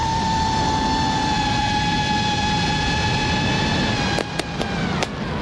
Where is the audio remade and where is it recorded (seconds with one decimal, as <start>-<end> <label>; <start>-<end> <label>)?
0.0-5.4 recorded